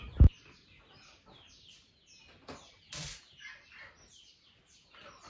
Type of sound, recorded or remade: recorded